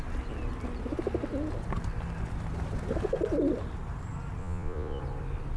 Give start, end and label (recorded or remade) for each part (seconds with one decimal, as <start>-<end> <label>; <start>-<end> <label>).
0.0-4.4 recorded; 4.4-5.0 remade; 5.0-5.6 recorded